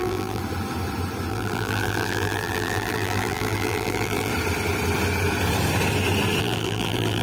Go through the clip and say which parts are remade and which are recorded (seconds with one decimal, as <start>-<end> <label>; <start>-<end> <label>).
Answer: 0.0-0.4 remade; 0.4-1.3 recorded; 1.3-4.3 remade; 4.3-6.4 recorded; 6.4-7.2 remade